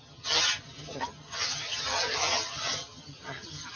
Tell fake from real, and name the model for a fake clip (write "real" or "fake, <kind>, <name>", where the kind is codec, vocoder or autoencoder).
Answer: fake, vocoder, HiFi-GAN